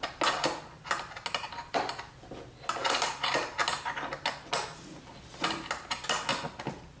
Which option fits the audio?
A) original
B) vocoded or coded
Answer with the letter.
A